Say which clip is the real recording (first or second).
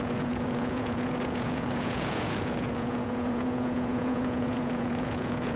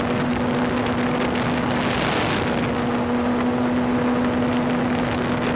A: second